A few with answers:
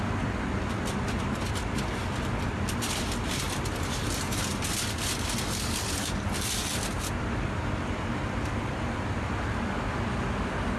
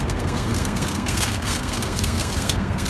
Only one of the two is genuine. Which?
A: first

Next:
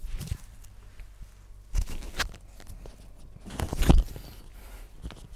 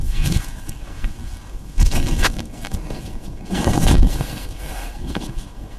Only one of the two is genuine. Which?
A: first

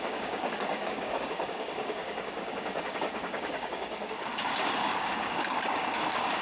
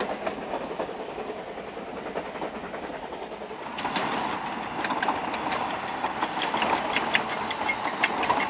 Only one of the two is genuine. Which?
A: second